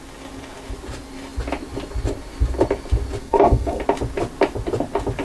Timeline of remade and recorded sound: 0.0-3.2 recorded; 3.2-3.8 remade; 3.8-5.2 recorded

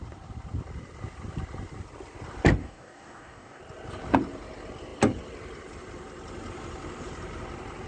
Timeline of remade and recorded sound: 0.0-2.6 recorded; 2.6-3.6 remade; 3.6-7.9 recorded

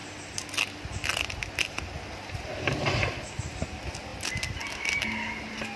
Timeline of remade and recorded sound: 0.0-5.8 recorded

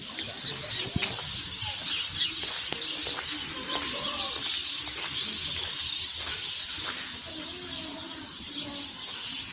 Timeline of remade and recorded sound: 0.0-9.5 recorded